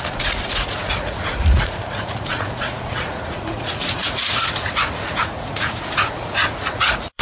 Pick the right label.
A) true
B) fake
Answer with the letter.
B